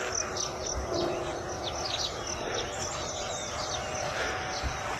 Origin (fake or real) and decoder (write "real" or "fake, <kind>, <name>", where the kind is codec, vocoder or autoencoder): real